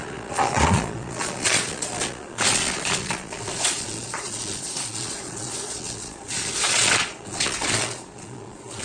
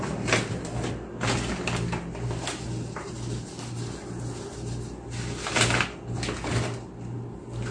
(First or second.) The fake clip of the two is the first